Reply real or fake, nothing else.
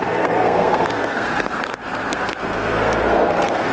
fake